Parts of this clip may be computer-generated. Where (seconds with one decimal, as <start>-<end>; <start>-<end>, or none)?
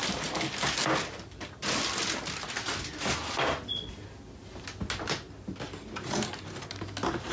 none